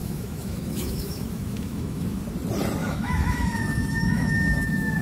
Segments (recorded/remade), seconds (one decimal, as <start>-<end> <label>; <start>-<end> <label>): 0.0-2.2 remade; 2.2-2.8 recorded; 2.8-5.0 remade